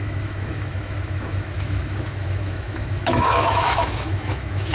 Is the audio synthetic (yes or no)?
yes